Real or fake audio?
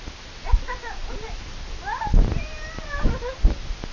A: real